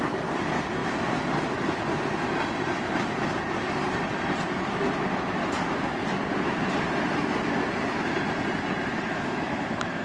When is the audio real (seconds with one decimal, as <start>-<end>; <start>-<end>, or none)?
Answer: 0.0-8.9

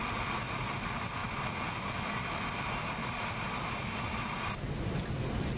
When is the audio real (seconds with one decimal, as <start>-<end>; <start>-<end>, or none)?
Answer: 0.0-5.6

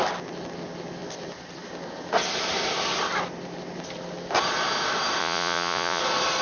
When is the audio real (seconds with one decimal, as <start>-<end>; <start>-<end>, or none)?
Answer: 0.0-5.2; 6.0-6.4